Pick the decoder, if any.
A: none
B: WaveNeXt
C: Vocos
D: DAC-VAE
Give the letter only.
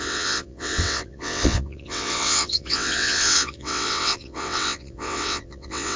B